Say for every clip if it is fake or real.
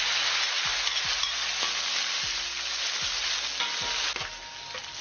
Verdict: real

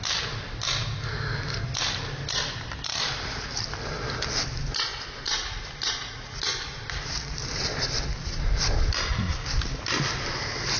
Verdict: real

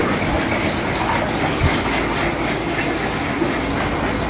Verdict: real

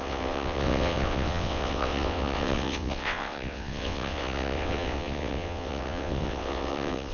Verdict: fake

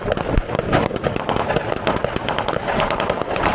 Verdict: real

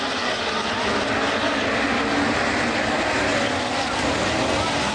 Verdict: real